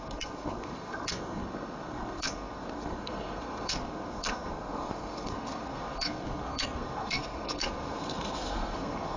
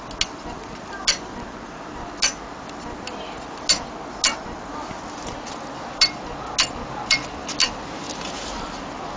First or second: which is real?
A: second